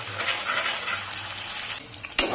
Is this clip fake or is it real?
real